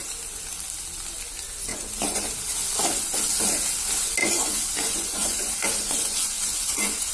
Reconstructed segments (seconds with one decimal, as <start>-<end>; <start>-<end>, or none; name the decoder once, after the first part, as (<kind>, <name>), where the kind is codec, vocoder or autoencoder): 1.7-2.3 (vocoder, Vocos); 4.2-7.1